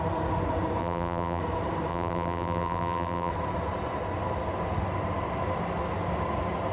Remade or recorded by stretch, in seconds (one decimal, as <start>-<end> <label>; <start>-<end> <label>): 0.0-0.8 recorded; 0.8-1.4 remade; 1.4-1.9 recorded; 1.9-3.3 remade; 3.3-6.7 recorded